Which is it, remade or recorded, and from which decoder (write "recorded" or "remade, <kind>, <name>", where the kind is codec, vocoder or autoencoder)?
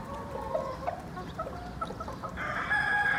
recorded